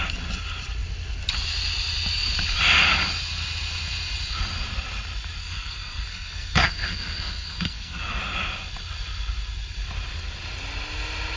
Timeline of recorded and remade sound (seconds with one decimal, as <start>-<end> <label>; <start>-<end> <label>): 0.0-5.4 recorded; 5.4-8.2 remade; 8.2-11.4 recorded